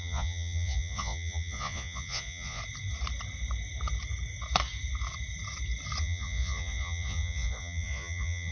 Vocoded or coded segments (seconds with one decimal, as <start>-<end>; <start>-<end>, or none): 0.0-2.6; 6.0-8.5